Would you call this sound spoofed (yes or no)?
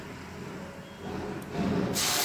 no